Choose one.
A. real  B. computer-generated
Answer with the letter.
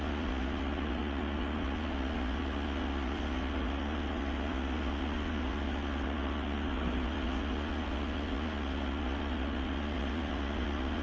B